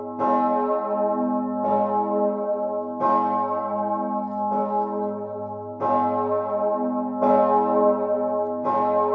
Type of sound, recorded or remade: recorded